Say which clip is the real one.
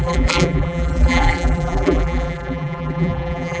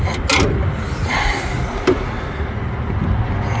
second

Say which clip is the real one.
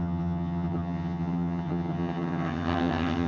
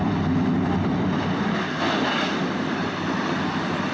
second